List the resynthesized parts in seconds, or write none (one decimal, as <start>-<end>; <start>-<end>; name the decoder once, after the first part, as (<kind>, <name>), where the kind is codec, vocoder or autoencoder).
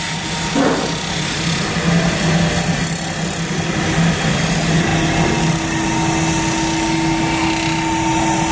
none